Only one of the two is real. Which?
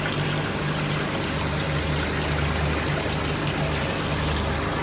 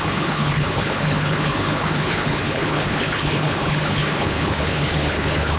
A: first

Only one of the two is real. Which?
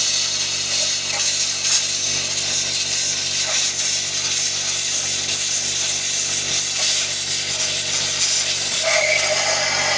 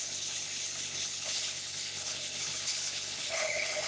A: first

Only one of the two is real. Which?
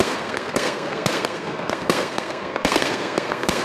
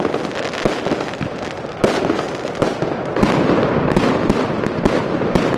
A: second